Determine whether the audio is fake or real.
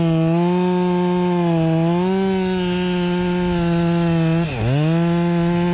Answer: real